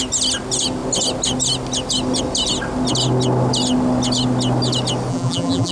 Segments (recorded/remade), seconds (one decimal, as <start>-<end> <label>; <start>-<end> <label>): 0.0-5.1 recorded; 5.1-5.7 remade

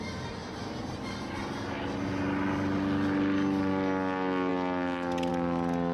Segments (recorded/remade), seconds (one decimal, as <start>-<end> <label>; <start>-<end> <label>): 0.0-0.4 recorded; 0.4-1.3 remade; 1.3-5.9 recorded

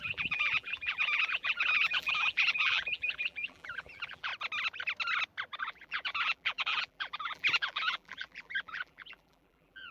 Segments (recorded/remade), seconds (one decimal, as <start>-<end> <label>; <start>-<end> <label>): 0.0-4.3 remade; 4.3-5.6 recorded; 5.6-9.9 remade

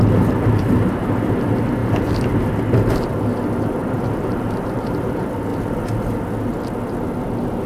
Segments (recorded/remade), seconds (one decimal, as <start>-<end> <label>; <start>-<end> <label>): 0.0-1.8 recorded; 1.8-2.4 remade; 2.4-3.8 recorded; 3.8-5.1 remade; 5.1-7.7 recorded

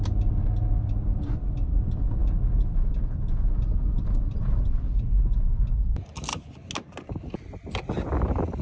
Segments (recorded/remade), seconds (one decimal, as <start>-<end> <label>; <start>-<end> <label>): 0.0-8.6 recorded

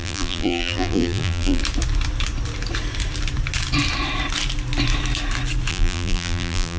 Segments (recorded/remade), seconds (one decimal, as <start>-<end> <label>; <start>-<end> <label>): 0.0-1.6 remade; 1.6-5.7 recorded; 5.7-6.8 remade

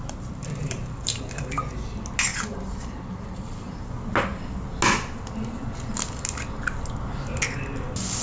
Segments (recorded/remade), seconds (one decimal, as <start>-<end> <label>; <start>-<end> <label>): 0.0-0.4 recorded; 0.4-1.2 remade; 1.2-2.3 recorded; 2.3-3.9 remade; 3.9-8.2 recorded